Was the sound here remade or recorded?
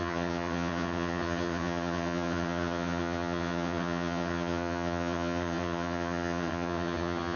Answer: remade